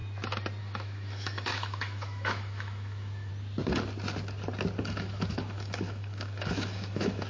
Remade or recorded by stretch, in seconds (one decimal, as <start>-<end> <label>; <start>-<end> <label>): 0.0-0.6 recorded; 0.6-3.3 remade; 3.3-4.8 recorded; 4.8-7.3 remade